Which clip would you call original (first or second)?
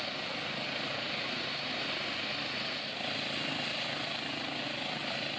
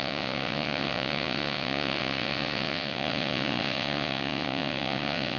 first